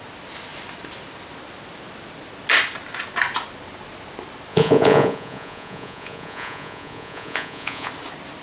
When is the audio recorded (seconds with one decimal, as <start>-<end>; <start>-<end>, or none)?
0.0-4.5; 7.9-8.4